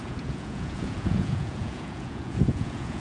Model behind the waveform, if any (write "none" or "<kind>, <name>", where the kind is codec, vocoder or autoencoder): vocoder, Vocos